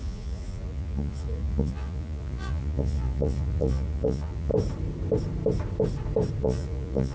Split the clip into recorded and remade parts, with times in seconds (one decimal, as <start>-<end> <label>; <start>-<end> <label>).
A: 0.0-4.5 remade; 4.5-6.4 recorded; 6.4-7.1 remade